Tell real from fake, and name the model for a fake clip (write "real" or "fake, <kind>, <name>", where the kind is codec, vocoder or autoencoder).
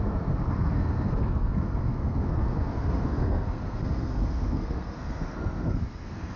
fake, codec, SNAC